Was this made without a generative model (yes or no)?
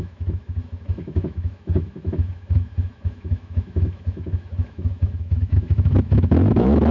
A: no